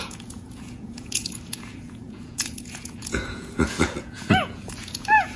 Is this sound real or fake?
fake